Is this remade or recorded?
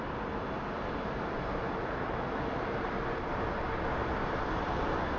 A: recorded